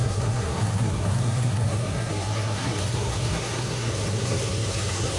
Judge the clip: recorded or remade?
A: remade